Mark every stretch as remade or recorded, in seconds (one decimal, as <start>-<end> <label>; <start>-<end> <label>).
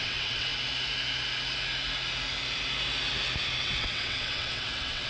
0.0-0.5 remade; 0.5-3.6 recorded; 3.6-5.1 remade